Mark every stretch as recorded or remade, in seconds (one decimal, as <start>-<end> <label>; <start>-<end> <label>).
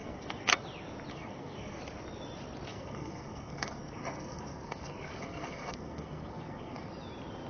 0.0-0.5 remade; 0.5-1.1 recorded; 1.1-1.8 remade; 1.8-2.7 recorded; 2.7-6.9 remade; 6.9-7.5 recorded